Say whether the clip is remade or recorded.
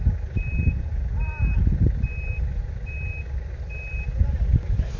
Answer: recorded